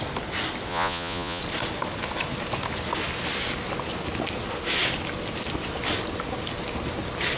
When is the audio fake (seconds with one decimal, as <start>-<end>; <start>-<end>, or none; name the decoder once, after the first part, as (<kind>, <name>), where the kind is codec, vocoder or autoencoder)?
0.7-1.4 (vocoder, Vocos)